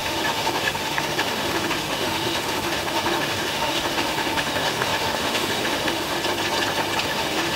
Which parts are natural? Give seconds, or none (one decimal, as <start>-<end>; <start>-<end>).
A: 6.2-7.0